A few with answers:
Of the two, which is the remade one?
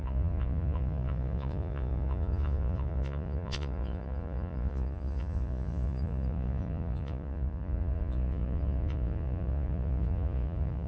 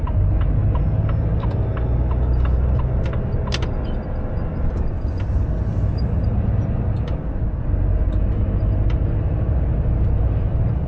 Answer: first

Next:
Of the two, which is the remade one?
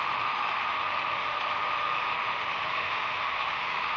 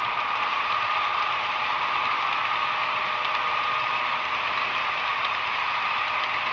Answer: first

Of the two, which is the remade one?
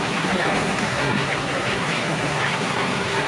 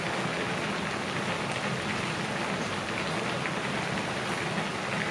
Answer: first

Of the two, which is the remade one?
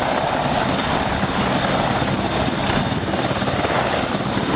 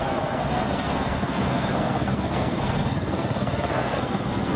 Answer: second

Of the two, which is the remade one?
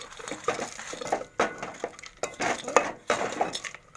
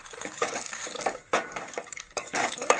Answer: second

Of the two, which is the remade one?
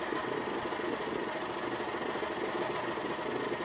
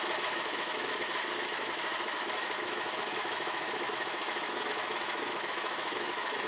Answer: second